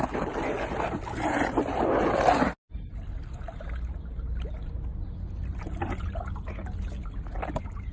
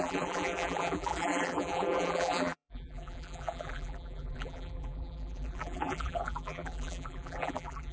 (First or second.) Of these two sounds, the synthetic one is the second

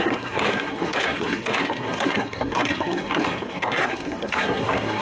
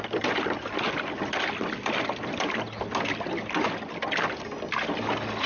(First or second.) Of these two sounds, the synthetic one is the first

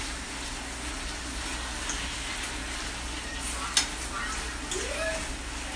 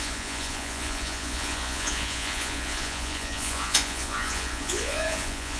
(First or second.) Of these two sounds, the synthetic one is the second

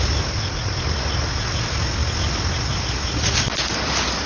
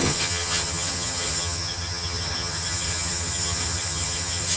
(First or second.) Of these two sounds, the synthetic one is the second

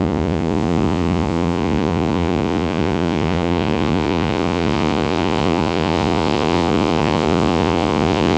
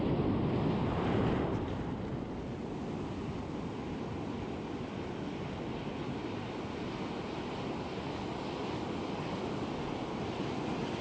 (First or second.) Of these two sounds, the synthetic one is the first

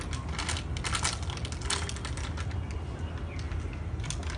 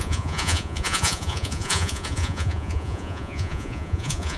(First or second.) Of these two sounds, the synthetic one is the second